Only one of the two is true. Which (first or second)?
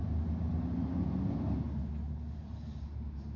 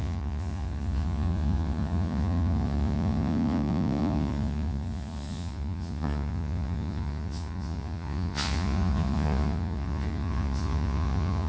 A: first